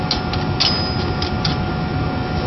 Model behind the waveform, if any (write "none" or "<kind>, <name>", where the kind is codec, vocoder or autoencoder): none